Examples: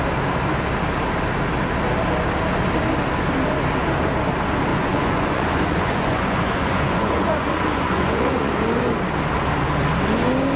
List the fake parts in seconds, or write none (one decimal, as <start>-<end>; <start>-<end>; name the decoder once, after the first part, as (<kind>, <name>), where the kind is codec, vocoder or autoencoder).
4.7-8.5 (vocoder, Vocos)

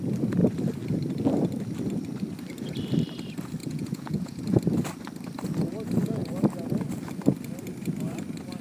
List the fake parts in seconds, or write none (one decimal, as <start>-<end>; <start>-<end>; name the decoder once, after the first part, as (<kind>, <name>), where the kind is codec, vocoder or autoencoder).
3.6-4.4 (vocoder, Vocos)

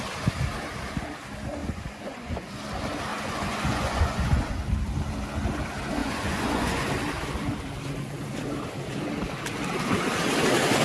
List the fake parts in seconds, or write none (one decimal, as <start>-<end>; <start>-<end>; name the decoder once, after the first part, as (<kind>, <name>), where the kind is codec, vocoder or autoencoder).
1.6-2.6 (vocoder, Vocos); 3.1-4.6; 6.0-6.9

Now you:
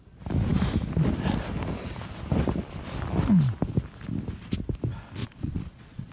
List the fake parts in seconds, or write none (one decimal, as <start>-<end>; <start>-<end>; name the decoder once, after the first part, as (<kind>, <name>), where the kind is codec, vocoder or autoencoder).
5.2-6.1 (vocoder, Vocos)

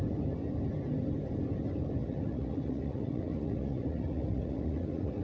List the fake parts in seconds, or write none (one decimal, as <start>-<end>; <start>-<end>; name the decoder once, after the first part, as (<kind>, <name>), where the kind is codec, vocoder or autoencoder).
2.0-5.2 (vocoder, Vocos)